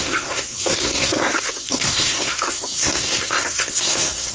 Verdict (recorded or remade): remade